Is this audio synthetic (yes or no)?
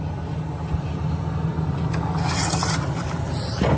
no